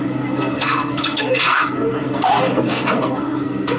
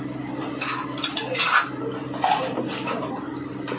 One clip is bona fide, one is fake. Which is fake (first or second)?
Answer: first